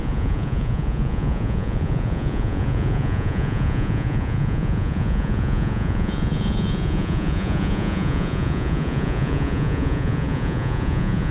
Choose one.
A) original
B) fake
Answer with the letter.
B